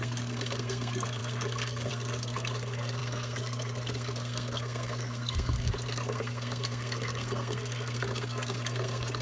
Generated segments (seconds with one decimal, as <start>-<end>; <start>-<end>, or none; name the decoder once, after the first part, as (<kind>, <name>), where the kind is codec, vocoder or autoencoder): 0.0-9.2 (codec, SNAC)